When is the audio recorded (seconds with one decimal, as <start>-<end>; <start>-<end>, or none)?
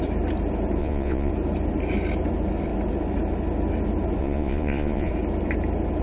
0.0-0.8; 1.3-4.2; 5.1-6.0